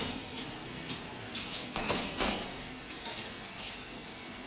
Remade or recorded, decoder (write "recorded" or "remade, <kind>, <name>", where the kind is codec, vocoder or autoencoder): remade, codec, SNAC